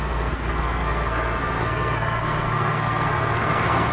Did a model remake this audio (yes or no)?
yes